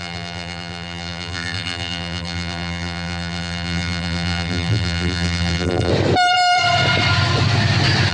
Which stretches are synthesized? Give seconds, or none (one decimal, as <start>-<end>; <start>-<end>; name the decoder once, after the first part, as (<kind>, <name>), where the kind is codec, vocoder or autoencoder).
0.0-5.9 (vocoder, BigVGAN v2)